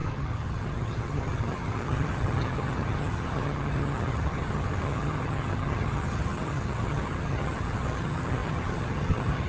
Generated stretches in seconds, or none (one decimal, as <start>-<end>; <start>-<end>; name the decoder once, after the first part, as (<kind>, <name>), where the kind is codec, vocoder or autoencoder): 0.0-9.5 (vocoder, HiFi-GAN)